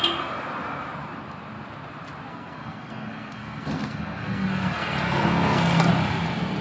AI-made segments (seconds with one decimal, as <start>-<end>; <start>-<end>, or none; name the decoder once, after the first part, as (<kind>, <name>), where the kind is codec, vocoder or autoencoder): 2.3-5.9 (codec, SNAC)